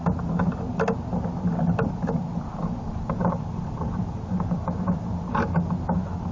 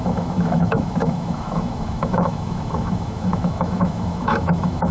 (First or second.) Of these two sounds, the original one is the first